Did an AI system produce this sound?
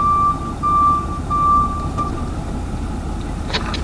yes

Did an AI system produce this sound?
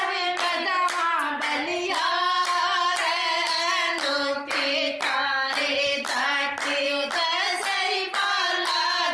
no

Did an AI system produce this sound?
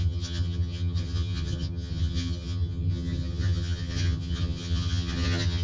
yes